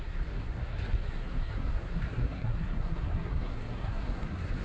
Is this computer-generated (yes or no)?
yes